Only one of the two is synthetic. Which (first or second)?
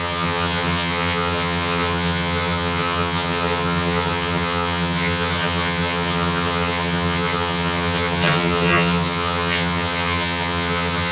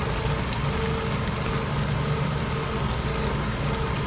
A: first